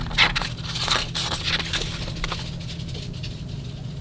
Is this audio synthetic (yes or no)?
no